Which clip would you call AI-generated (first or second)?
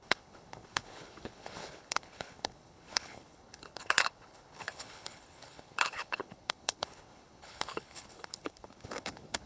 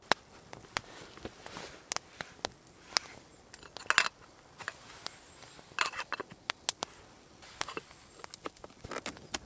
first